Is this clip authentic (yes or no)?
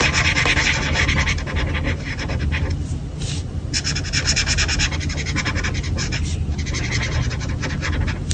yes